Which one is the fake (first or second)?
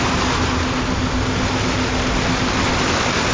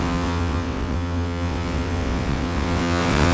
second